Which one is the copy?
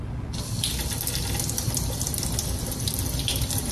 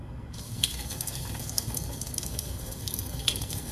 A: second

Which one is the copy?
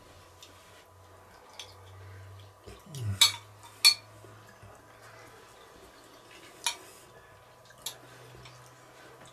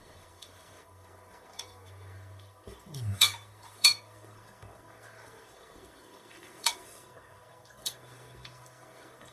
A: second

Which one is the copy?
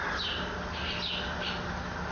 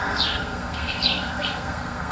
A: second